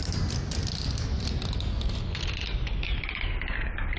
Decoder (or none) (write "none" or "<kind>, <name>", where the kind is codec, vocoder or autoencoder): none